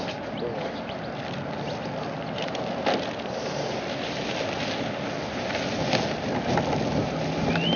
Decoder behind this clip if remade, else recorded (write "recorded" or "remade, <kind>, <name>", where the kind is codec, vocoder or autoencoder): recorded